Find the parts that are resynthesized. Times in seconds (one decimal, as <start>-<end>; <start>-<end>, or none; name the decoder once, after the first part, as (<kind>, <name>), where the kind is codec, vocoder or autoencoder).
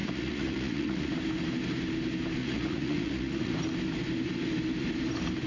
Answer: 0.0-1.1 (vocoder, Vocos); 2.4-3.5